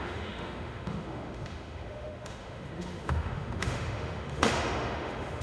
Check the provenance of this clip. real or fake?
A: fake